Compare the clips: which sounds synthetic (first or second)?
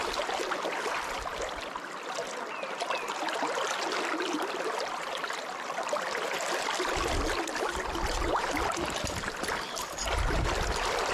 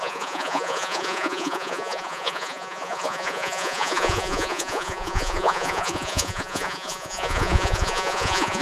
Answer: second